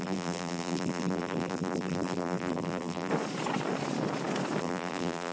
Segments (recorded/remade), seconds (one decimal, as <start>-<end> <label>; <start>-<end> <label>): 0.0-3.1 remade; 3.1-4.6 recorded; 4.6-5.3 remade